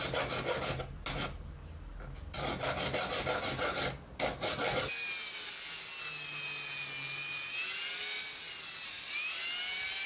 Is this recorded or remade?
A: recorded